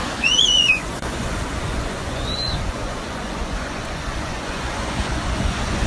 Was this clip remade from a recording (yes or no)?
yes